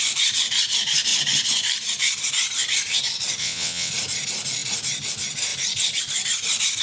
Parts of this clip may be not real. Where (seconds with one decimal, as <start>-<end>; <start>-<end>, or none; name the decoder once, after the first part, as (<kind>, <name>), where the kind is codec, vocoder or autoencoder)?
3.4-3.9 (vocoder, WaveNeXt)

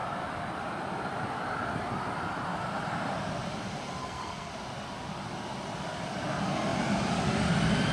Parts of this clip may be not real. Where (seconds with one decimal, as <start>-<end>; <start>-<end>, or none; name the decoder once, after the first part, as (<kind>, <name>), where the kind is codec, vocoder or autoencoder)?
4.0-4.5 (codec, SNAC)

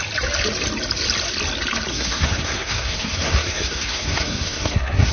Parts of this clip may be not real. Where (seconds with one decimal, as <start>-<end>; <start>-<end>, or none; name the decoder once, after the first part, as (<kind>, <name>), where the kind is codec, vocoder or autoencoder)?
1.9-5.1 (codec, SNAC)